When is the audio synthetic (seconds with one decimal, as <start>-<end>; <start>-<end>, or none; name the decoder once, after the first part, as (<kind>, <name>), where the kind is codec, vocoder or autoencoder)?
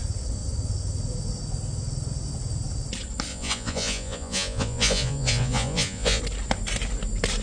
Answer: 3.3-6.2 (vocoder, Vocos)